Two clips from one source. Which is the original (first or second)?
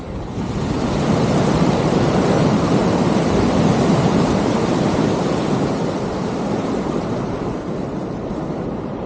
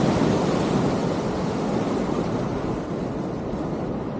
second